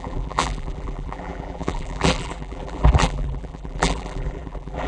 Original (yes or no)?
no